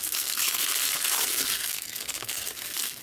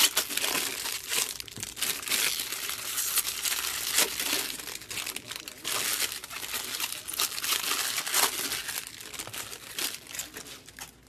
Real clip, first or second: second